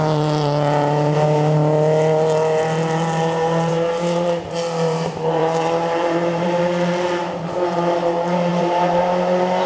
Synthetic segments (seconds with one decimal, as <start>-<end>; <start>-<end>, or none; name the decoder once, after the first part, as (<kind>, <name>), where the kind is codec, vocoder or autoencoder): 3.7-6.6 (vocoder, BigVGAN v2); 8.5-9.0